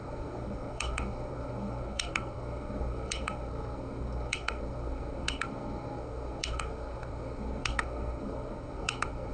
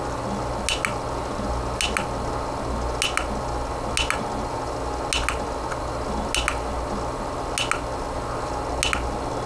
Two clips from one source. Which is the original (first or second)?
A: second